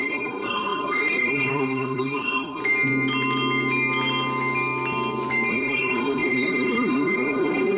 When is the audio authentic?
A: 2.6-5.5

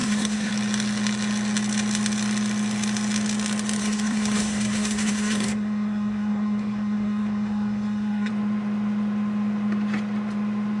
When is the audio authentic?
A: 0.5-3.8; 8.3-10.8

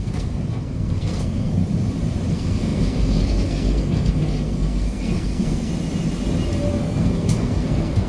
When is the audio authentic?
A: 1.6-2.3; 5.7-6.7

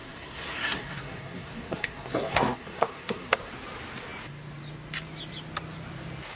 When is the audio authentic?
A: 3.5-6.4

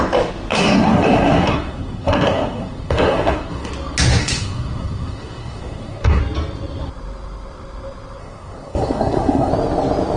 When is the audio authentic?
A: 0.0-0.5; 3.7-4.2; 6.2-8.2; 9.5-10.2

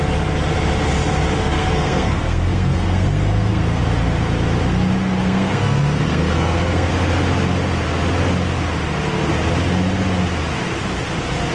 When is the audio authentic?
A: 0.0-1.4; 3.8-5.2; 6.9-11.5

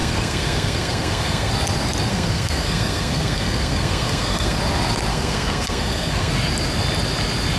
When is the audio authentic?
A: 1.5-2.1; 4.6-5.1; 6.3-7.6

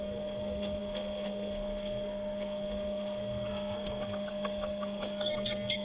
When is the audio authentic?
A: none